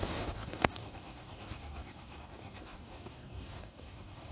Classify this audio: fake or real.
fake